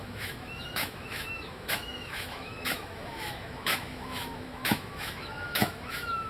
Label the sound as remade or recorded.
remade